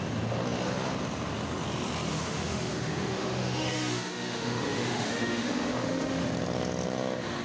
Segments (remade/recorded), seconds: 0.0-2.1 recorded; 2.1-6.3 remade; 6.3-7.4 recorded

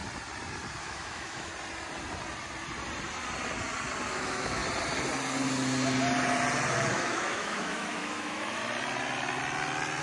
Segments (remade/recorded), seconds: 0.0-0.8 recorded; 0.8-1.5 remade; 1.5-4.1 recorded; 4.1-4.6 remade; 4.6-6.9 recorded; 6.9-8.6 remade; 8.6-10.0 recorded

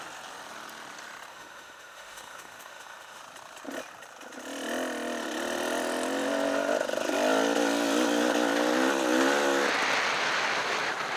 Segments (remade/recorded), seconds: 0.0-1.3 recorded; 1.3-3.2 remade; 3.2-11.2 recorded

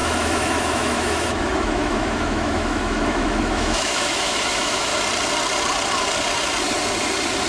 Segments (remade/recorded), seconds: 0.0-4.9 remade; 4.9-7.5 recorded

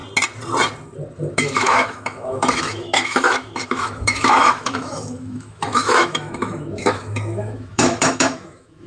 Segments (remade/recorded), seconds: 0.0-1.3 recorded; 1.3-8.9 remade

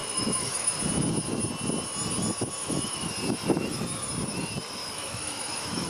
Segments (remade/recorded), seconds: 0.0-0.8 remade; 0.8-2.6 recorded; 2.6-3.1 remade; 3.1-4.8 recorded; 4.8-5.9 remade

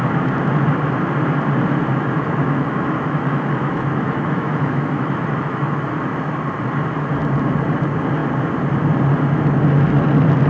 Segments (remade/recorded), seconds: 0.0-1.9 recorded; 1.9-5.8 remade; 5.8-10.5 recorded